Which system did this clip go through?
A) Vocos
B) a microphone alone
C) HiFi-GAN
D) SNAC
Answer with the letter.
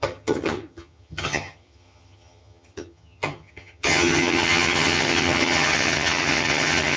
C